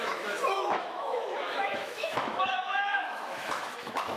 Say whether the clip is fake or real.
fake